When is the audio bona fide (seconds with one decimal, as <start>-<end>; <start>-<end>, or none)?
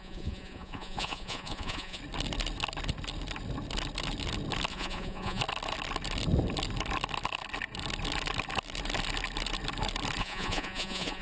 2.0-4.7; 5.4-10.2